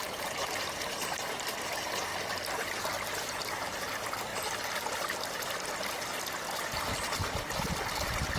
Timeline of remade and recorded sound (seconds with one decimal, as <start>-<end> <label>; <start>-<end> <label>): 0.0-2.1 remade; 2.1-3.4 recorded; 3.4-4.3 remade; 4.3-8.4 recorded